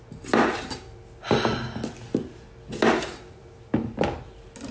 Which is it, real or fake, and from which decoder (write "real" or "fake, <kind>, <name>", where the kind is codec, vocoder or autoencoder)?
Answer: real